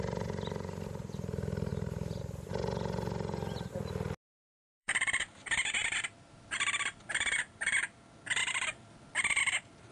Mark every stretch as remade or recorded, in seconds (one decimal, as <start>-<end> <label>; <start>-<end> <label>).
0.0-4.3 recorded; 4.3-7.8 remade; 7.8-8.4 recorded; 8.4-9.4 remade; 9.4-9.9 recorded

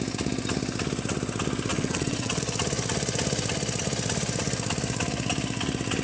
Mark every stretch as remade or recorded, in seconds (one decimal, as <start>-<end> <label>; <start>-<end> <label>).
0.0-1.7 recorded; 1.7-2.4 remade; 2.4-6.0 recorded

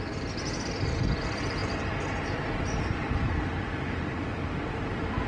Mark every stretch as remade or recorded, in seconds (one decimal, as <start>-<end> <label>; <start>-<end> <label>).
0.0-5.3 recorded

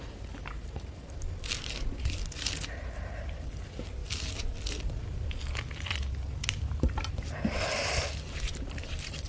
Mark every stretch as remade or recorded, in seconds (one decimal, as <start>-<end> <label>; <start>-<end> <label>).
0.0-9.3 recorded

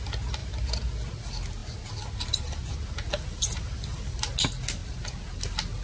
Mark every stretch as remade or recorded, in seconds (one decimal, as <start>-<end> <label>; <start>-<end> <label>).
0.0-5.8 recorded

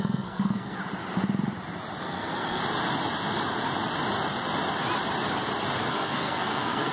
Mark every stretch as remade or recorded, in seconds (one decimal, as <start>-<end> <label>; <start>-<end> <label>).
0.0-0.8 remade; 0.8-2.0 recorded; 2.0-2.6 remade; 2.6-5.9 recorded; 5.9-6.9 remade

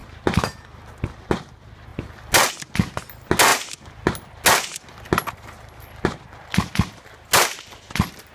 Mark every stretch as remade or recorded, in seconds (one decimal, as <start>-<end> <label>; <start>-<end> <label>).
0.0-8.3 recorded

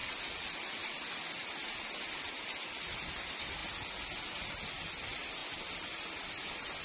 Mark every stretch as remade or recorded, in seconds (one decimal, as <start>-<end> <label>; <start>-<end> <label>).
0.0-6.8 recorded